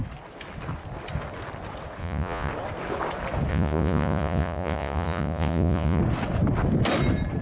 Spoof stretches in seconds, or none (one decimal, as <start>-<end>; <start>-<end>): 2.0-2.5; 3.5-6.0